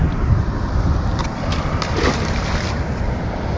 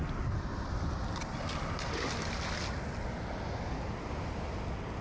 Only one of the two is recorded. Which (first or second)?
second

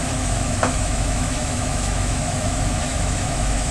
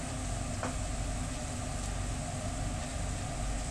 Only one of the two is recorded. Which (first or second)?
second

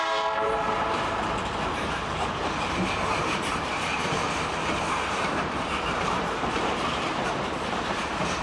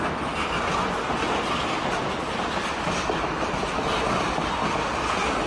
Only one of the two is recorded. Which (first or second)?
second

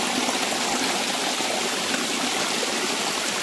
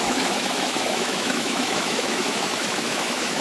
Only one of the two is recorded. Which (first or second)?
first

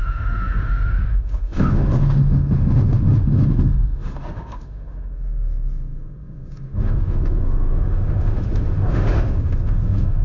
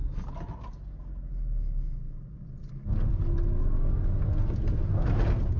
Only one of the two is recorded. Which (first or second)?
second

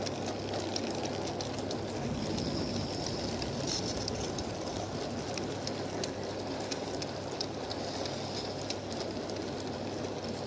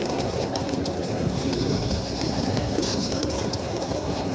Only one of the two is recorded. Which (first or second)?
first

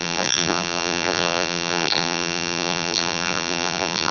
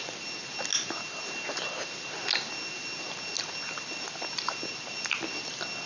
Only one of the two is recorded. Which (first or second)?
second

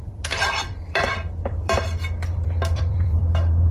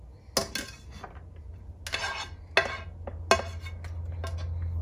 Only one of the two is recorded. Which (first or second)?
second